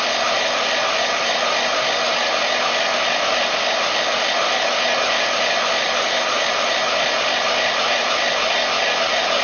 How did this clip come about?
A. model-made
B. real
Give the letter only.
B